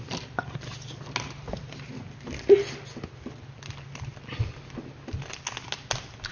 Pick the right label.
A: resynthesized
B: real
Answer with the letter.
B